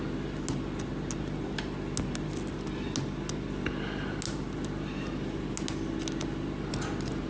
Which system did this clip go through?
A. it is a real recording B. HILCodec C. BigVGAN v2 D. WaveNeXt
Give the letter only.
A